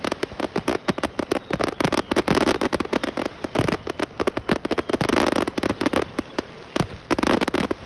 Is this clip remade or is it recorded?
recorded